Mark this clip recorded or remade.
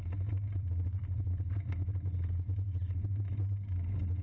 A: recorded